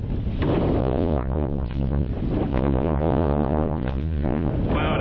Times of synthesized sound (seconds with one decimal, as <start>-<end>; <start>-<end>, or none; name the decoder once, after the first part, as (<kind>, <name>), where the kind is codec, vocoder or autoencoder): 0.8-2.1 (vocoder, Vocos); 2.5-4.5